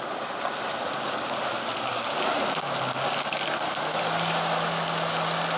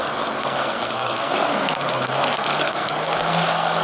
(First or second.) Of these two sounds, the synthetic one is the second